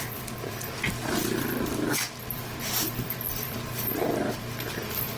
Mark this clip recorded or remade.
remade